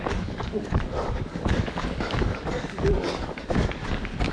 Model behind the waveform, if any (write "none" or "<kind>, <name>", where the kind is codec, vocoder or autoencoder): codec, DAC